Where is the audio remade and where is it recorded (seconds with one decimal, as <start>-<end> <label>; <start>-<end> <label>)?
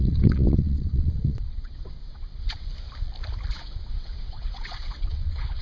0.0-2.7 remade; 2.7-3.5 recorded; 3.5-5.6 remade